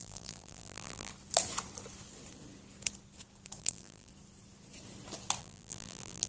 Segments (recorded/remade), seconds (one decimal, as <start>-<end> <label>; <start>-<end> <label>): 0.0-1.1 remade; 1.1-3.6 recorded; 3.6-4.1 remade; 4.1-5.4 recorded; 5.4-6.3 remade